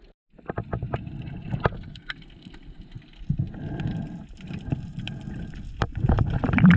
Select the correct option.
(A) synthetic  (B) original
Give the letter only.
B